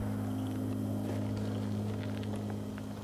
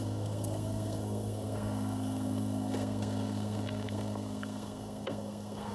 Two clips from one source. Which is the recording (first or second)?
first